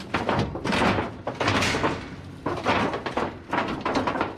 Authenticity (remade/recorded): recorded